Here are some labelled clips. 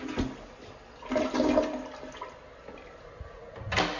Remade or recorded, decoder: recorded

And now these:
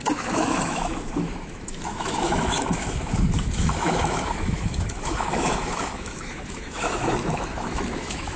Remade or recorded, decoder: remade, autoencoder, DAC-VAE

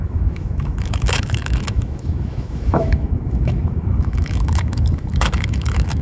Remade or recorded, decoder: remade, autoencoder, DAC-VAE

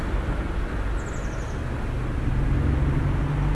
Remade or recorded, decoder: recorded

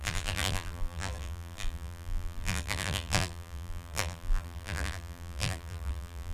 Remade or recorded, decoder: remade, vocoder, BigVGAN v2